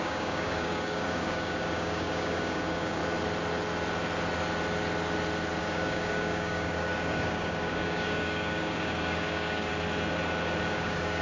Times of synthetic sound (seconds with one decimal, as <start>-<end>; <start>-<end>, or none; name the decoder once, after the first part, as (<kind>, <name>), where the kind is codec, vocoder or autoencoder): 0.0-3.0 (codec, DAC); 5.6-9.7; 10.7-11.2